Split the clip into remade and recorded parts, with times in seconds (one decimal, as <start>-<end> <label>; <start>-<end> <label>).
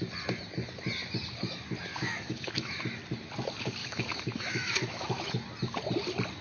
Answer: 0.0-1.9 recorded; 1.9-3.0 remade; 3.0-3.8 recorded; 3.8-5.3 remade; 5.3-6.4 recorded